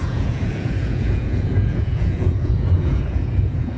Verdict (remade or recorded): remade